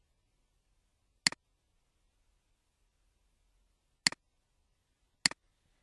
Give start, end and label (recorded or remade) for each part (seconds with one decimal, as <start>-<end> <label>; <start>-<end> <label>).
0.0-5.8 recorded